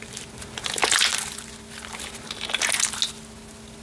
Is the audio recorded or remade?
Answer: recorded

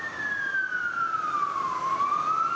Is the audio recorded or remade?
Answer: recorded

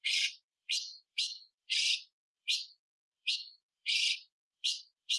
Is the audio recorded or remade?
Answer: remade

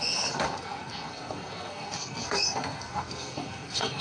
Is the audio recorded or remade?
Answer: remade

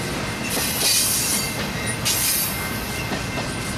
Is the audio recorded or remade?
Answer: recorded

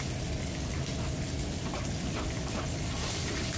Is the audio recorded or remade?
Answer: recorded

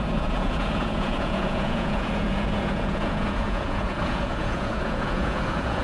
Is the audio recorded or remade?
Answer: remade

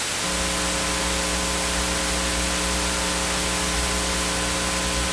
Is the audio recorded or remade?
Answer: recorded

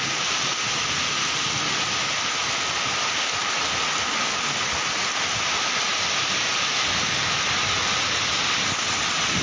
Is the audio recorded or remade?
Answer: recorded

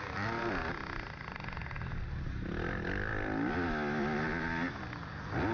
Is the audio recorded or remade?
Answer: recorded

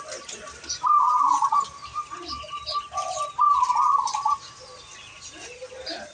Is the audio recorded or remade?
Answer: recorded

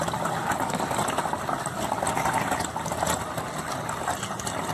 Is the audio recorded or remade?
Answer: recorded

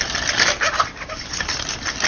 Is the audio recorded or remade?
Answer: recorded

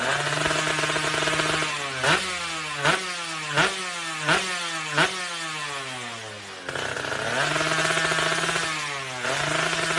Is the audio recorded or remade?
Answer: recorded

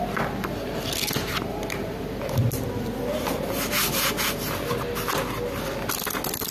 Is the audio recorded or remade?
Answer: recorded